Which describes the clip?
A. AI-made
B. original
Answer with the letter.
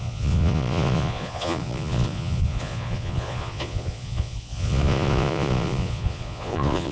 A